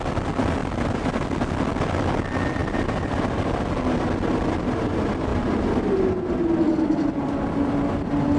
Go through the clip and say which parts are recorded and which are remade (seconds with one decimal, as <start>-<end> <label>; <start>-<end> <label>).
0.0-0.6 recorded; 0.6-1.1 remade; 1.1-2.6 recorded; 2.6-3.6 remade; 3.6-8.4 recorded